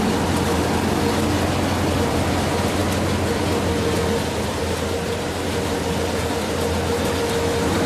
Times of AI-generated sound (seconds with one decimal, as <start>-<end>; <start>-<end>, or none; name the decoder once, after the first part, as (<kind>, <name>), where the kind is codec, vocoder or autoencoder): none